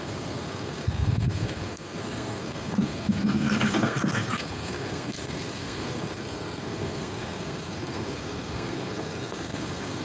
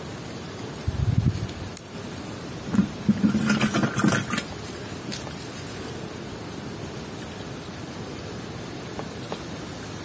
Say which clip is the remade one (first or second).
first